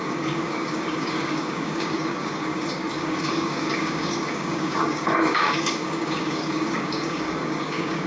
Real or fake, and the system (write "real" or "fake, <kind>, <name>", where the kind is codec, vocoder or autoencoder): fake, codec, DAC